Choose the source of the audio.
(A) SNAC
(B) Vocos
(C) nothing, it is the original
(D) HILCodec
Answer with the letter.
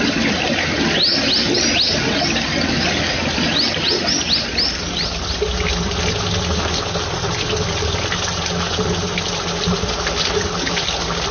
C